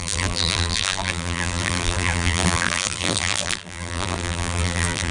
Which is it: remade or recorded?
remade